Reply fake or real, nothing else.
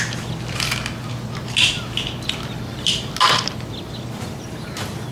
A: real